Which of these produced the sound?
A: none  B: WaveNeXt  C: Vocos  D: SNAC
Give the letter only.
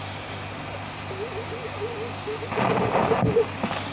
A